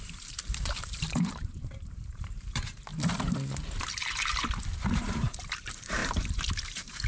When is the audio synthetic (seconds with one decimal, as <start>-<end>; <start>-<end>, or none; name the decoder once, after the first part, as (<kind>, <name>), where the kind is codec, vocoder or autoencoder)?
0.0-2.9 (vocoder, BigVGAN v2); 4.0-4.4; 5.0-7.1